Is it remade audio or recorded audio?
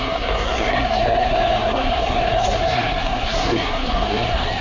remade